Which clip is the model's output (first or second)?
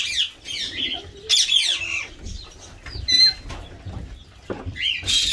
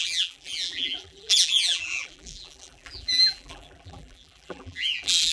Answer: second